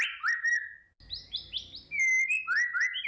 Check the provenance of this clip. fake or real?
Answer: real